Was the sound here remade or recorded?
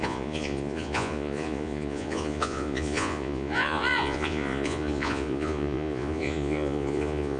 remade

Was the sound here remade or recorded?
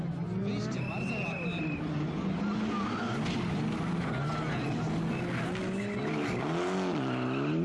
recorded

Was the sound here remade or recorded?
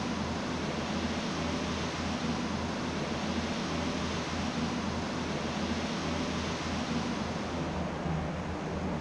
recorded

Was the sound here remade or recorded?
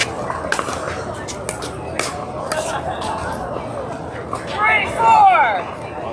recorded